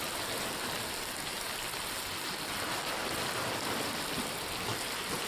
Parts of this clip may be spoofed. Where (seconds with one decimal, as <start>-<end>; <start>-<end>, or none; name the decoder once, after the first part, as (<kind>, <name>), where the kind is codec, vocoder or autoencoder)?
none